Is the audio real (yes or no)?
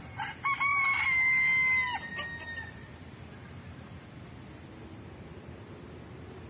yes